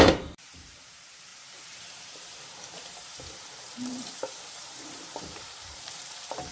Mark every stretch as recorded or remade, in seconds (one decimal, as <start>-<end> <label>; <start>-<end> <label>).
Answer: 0.0-6.5 remade